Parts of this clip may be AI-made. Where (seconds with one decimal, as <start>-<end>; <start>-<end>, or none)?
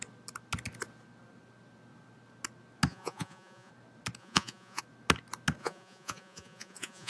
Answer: 2.9-3.7; 4.2-4.8; 5.6-7.1